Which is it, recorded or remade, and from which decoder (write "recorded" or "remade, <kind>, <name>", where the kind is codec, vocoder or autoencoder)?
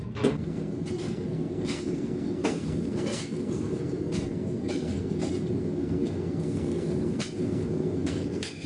remade, codec, SNAC